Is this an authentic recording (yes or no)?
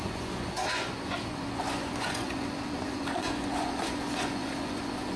no